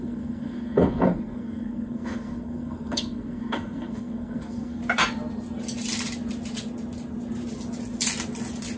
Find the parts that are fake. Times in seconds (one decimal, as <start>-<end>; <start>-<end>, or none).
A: 0.0-4.8